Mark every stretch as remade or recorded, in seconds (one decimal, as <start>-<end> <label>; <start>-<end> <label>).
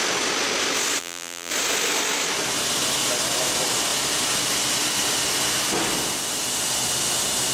0.0-1.0 recorded; 1.0-1.5 remade; 1.5-7.5 recorded